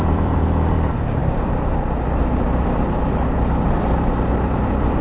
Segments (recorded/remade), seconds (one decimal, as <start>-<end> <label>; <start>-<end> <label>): 0.0-5.0 remade